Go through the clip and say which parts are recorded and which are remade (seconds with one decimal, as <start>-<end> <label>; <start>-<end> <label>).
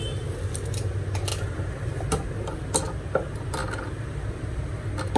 0.0-5.2 recorded